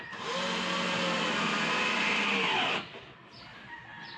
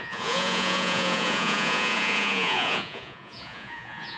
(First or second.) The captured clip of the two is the first